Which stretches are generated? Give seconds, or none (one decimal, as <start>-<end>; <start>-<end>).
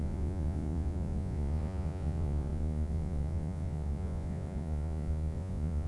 0.0-5.9